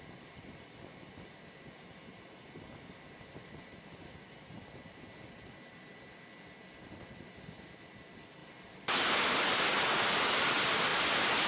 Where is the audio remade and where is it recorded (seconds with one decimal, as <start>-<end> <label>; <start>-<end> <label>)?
0.0-11.5 recorded